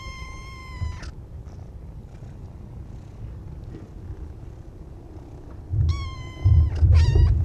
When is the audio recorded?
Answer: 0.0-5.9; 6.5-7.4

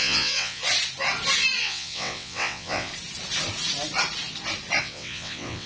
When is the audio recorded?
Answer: 0.6-1.6; 2.9-4.8

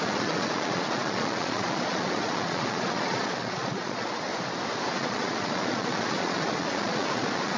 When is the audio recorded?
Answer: 4.3-4.9